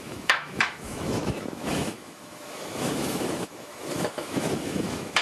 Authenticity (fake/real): fake